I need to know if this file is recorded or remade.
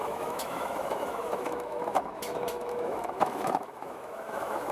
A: remade